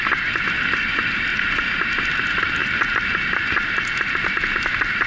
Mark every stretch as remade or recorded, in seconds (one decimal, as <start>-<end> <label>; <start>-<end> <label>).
0.0-5.1 recorded